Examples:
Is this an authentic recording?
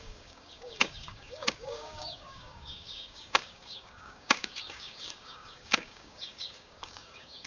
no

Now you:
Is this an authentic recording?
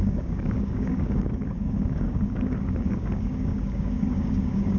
no